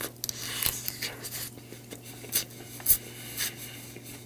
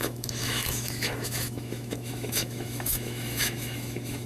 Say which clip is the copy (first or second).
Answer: second